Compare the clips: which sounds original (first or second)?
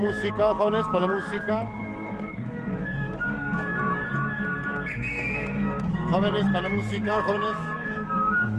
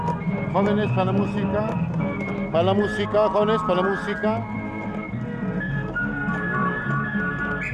second